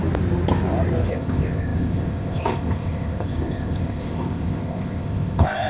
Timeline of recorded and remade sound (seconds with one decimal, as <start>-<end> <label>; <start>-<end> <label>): 0.0-1.1 recorded; 1.1-5.7 remade

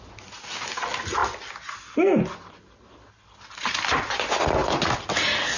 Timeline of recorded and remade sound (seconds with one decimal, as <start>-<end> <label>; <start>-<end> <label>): 0.0-5.6 recorded